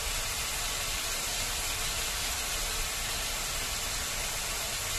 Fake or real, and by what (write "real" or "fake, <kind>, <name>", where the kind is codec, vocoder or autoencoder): real